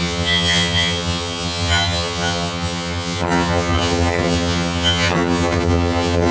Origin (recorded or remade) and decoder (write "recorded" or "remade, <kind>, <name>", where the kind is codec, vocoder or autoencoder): remade, vocoder, HiFi-GAN